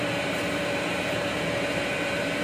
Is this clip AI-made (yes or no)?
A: yes